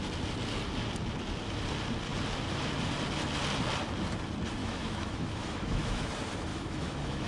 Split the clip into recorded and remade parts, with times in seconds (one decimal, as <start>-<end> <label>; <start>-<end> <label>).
0.0-4.6 recorded; 4.6-6.1 remade; 6.1-6.5 recorded; 6.5-7.3 remade